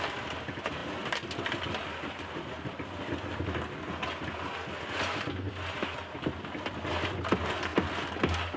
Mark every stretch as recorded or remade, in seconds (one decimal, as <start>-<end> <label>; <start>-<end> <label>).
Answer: 0.0-8.6 recorded